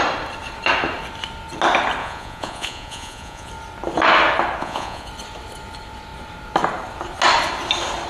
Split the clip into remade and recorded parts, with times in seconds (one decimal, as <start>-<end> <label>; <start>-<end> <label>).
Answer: 0.0-2.0 recorded; 2.0-3.5 remade; 3.5-4.6 recorded; 4.6-5.1 remade; 5.1-8.1 recorded